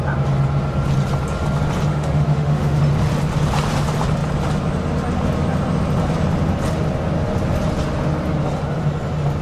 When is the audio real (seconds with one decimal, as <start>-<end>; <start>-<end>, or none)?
0.0-1.9; 2.8-9.4